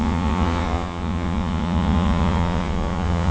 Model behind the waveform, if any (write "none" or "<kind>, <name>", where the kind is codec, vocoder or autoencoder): vocoder, Vocos